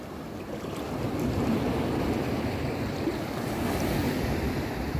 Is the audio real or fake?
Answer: real